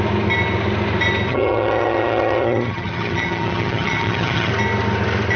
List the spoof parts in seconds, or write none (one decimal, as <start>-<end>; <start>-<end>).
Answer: 1.3-4.5